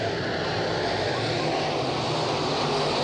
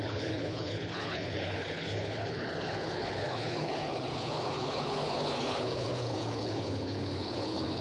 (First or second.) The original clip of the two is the first